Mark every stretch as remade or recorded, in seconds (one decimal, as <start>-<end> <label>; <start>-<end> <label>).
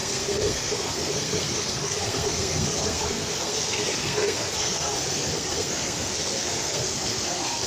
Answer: 0.0-7.7 remade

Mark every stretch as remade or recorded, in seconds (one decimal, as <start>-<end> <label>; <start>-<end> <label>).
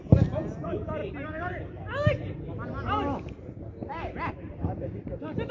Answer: 0.0-5.5 recorded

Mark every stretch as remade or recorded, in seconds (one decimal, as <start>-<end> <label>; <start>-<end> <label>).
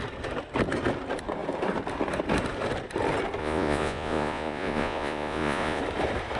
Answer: 0.0-3.4 recorded; 3.4-5.8 remade; 5.8-6.4 recorded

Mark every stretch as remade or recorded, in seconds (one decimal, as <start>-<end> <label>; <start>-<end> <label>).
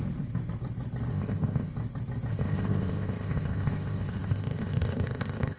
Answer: 0.0-1.1 recorded; 1.1-1.7 remade; 1.7-2.3 recorded; 2.3-5.6 remade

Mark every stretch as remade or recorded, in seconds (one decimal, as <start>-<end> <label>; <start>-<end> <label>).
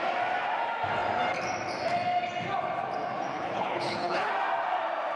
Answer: 0.0-3.3 recorded; 3.3-4.3 remade; 4.3-5.2 recorded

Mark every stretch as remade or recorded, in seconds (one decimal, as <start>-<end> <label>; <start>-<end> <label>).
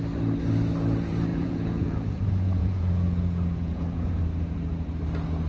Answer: 0.0-1.3 recorded; 1.3-2.2 remade; 2.2-2.6 recorded; 2.6-4.2 remade; 4.2-5.5 recorded